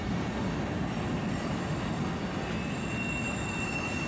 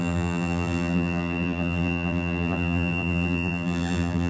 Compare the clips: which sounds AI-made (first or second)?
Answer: second